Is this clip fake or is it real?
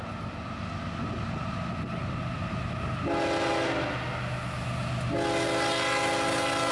real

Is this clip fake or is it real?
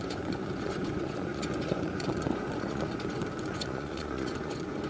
fake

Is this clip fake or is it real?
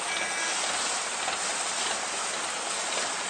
real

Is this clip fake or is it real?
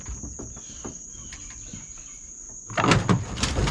real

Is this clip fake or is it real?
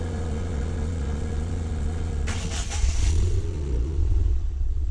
fake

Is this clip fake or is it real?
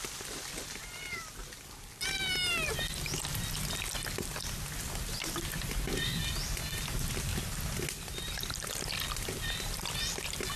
real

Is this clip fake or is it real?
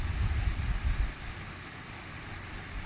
real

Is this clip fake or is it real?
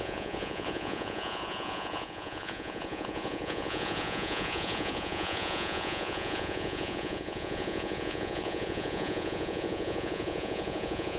fake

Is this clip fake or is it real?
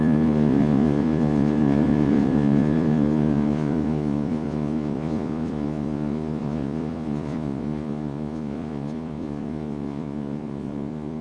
fake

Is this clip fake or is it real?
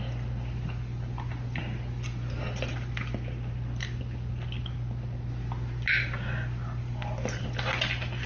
real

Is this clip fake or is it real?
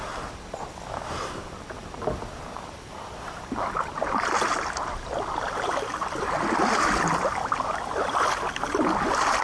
real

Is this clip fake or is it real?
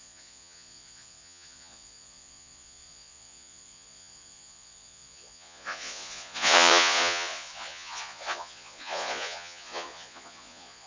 fake